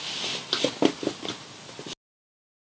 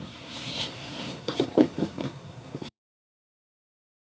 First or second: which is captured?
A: first